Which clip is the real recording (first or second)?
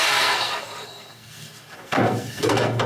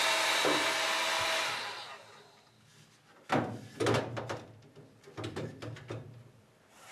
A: second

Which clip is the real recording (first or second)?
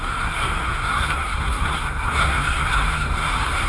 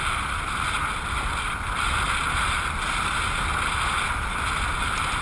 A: second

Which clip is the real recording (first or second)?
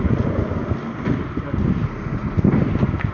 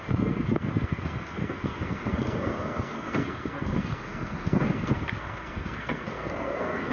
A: first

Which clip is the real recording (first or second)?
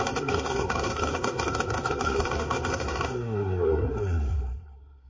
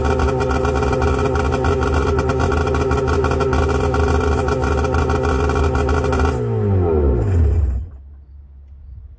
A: second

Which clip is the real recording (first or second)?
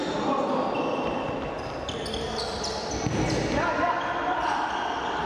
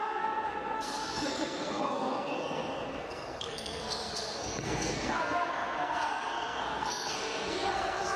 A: first